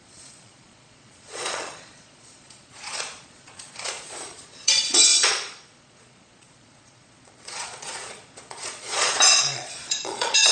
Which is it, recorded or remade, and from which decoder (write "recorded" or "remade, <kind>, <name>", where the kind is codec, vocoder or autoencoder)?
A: remade, vocoder, Vocos